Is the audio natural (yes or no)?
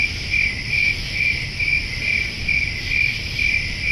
yes